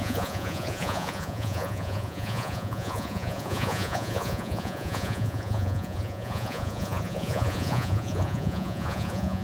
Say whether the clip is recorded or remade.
remade